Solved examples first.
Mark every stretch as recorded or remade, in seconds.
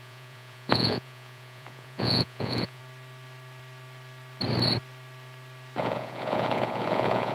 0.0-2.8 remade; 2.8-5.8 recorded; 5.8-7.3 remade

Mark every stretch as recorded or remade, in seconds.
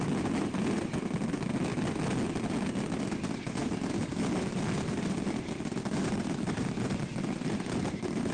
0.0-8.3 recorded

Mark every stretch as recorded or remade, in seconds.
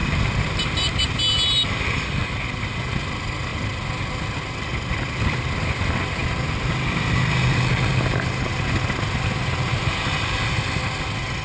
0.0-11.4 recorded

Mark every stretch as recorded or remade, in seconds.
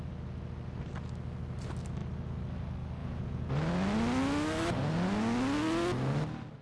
0.0-3.0 recorded; 3.0-3.5 remade; 3.5-6.6 recorded